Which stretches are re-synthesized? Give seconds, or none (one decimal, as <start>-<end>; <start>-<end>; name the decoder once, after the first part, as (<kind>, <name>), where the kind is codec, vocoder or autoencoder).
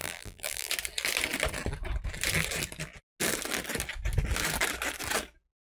0.0-0.7 (vocoder, BigVGAN v2)